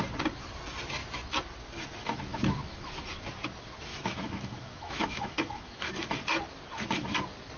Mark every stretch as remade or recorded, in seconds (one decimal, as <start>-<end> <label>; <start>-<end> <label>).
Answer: 0.0-2.3 recorded; 2.3-2.9 remade; 2.9-3.9 recorded; 3.9-5.9 remade; 5.9-7.6 recorded